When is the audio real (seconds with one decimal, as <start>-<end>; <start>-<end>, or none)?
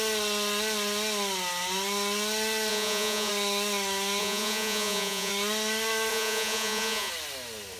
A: 0.0-2.7; 3.3-4.2; 5.3-6.1; 7.1-7.8